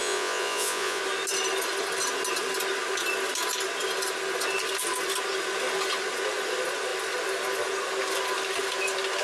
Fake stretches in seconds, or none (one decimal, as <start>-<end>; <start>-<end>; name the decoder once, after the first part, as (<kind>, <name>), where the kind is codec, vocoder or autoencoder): 0.0-1.0 (vocoder, Vocos)